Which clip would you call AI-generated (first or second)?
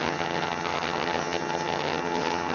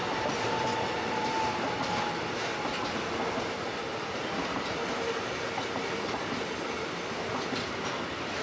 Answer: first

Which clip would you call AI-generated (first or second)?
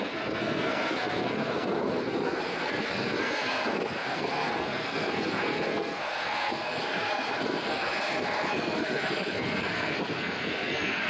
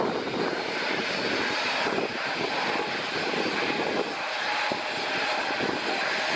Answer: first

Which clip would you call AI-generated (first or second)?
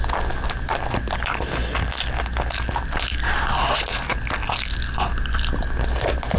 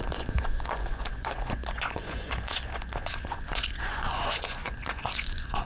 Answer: second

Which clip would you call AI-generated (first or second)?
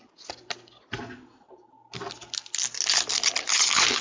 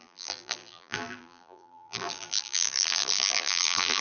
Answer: second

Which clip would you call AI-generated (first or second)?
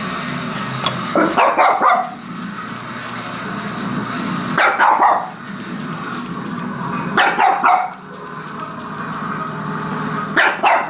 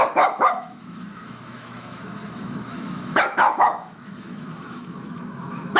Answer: second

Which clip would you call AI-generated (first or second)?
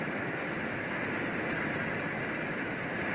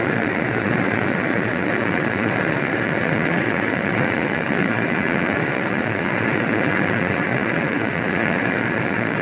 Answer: second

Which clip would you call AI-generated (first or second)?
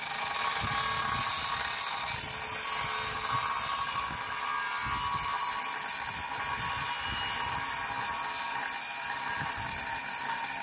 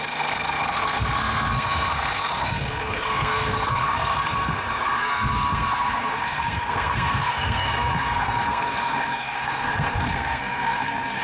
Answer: second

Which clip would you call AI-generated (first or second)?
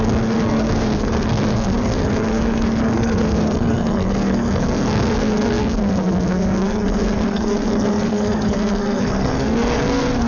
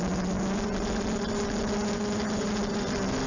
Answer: first